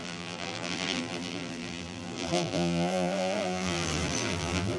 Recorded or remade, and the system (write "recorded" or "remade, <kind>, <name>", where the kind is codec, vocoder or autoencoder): remade, vocoder, BigVGAN v2